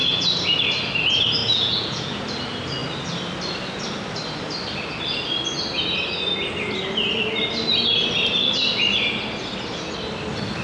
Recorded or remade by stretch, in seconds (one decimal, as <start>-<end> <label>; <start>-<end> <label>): 0.0-1.4 recorded; 1.4-2.2 remade; 2.2-10.6 recorded